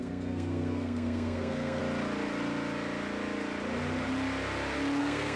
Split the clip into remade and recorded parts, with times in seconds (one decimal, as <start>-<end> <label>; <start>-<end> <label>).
0.0-1.8 remade; 1.8-5.0 recorded; 5.0-5.4 remade